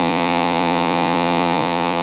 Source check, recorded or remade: remade